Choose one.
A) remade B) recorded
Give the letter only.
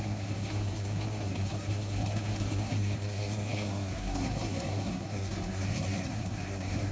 A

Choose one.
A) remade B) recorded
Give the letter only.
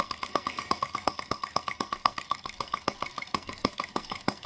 A